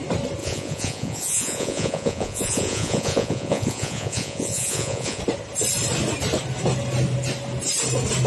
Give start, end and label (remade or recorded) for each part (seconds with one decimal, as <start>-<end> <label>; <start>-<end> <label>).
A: 0.0-0.4 recorded; 0.4-5.2 remade; 5.2-8.3 recorded